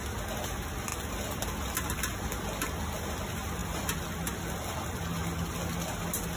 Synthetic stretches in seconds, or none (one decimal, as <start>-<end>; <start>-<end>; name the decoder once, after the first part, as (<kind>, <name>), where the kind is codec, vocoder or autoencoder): none